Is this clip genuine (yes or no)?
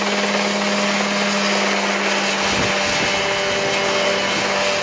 yes